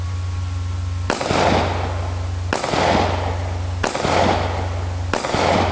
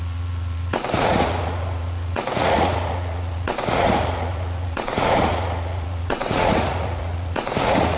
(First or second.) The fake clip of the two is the second